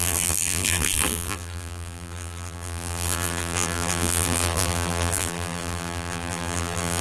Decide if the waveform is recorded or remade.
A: remade